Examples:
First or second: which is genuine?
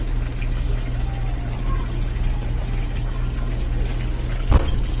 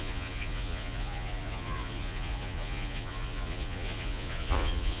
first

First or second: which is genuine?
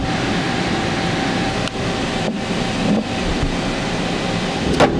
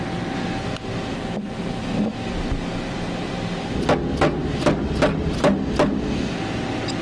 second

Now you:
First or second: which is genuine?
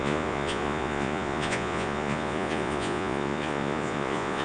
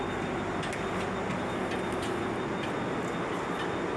second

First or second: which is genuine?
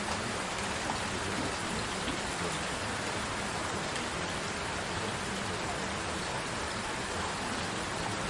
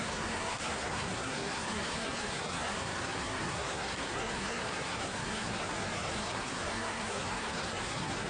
first